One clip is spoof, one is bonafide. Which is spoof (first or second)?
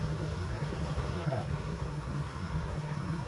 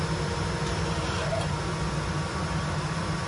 first